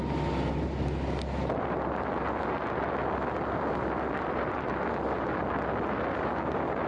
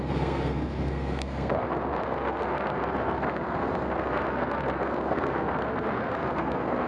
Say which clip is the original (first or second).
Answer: first